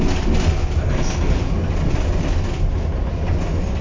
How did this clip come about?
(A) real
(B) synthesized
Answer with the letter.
A